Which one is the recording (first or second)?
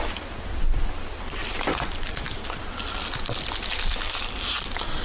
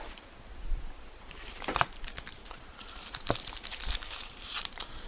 first